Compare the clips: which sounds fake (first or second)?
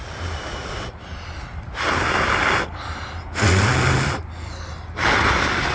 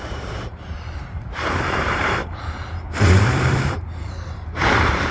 second